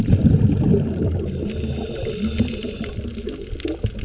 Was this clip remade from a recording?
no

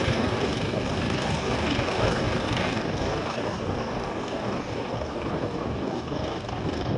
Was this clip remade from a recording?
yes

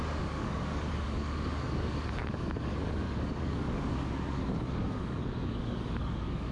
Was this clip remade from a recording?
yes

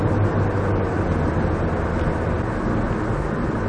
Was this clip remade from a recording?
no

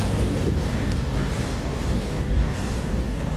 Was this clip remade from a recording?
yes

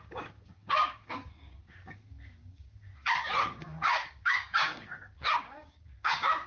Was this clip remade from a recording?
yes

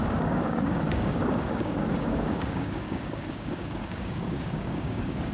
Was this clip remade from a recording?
yes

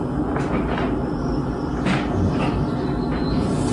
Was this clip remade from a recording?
no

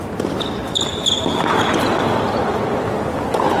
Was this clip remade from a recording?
no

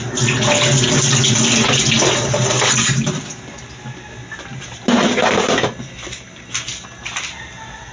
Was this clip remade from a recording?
no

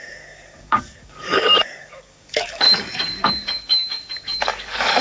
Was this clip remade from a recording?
yes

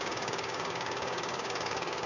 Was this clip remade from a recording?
yes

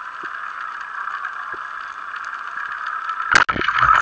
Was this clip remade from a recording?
no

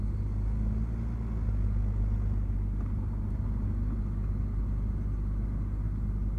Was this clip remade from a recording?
no